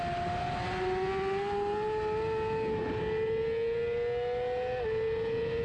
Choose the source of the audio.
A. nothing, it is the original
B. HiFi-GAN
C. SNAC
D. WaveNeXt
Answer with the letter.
A